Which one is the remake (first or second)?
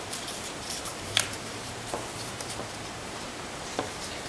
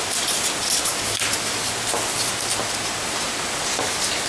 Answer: first